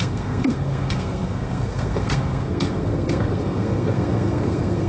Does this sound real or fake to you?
fake